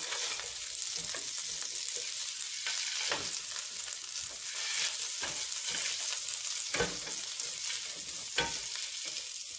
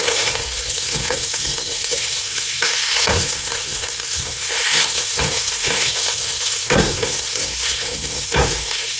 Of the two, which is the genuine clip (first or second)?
first